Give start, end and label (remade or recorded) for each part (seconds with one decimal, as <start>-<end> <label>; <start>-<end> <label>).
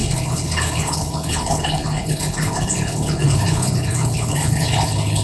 0.0-5.2 remade